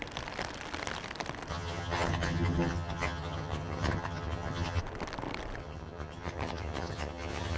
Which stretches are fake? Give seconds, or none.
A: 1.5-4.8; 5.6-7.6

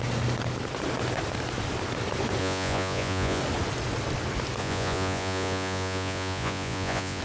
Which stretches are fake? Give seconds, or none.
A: 2.4-3.4; 4.6-7.2

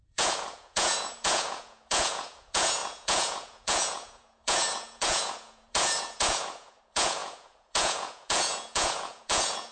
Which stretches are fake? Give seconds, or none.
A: 0.0-9.7

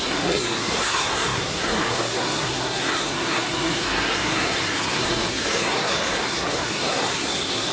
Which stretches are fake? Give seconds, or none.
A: 0.0-7.7

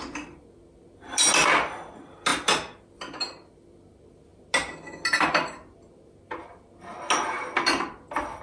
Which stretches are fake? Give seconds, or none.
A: none

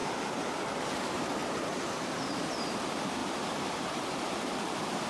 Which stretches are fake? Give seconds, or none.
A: 0.0-0.5; 3.2-4.5

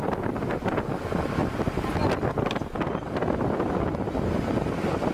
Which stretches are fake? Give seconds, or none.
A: none